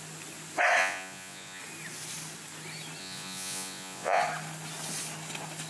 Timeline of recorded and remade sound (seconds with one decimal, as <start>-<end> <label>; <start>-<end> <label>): 0.0-0.8 recorded; 0.8-1.6 remade; 1.6-3.0 recorded; 3.0-4.2 remade; 4.2-5.7 recorded